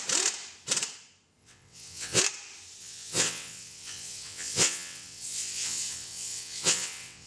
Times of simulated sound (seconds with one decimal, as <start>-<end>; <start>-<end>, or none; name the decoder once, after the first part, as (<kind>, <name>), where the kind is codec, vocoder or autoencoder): 1.4-2.2 (vocoder, WaveNeXt); 2.8-7.3